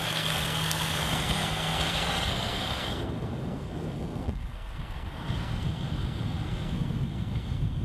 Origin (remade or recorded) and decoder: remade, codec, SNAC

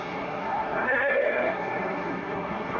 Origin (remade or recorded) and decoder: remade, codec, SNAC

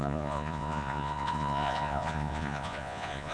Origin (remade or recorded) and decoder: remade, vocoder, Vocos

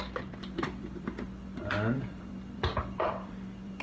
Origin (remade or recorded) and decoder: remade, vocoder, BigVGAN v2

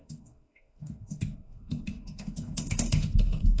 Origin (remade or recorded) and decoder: remade, autoencoder, DAC-VAE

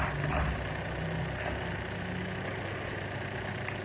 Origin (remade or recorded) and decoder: recorded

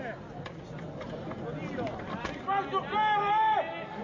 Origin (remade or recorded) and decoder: recorded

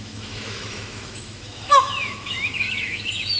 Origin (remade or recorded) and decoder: remade, autoencoder, DAC-VAE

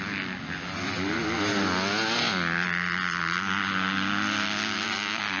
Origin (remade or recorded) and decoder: recorded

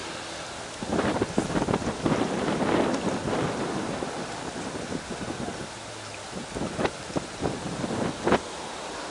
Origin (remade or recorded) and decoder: recorded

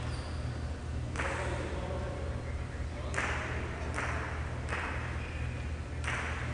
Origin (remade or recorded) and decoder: recorded